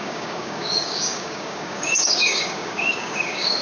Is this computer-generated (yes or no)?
yes